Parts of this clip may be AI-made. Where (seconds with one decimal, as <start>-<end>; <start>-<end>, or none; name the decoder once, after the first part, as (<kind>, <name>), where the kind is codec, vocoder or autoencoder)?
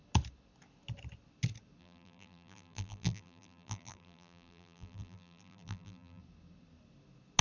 1.8-6.2 (vocoder, BigVGAN v2)